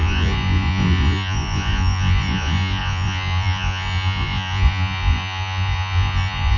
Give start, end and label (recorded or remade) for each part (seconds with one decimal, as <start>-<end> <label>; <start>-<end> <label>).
0.0-6.6 remade